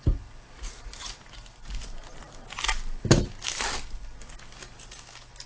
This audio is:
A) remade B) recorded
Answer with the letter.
B